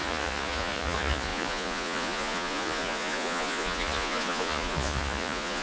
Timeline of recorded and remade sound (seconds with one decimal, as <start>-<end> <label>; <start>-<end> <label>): 0.0-5.6 remade